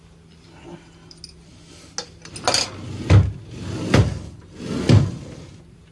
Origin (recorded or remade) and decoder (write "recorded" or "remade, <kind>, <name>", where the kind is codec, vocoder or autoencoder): recorded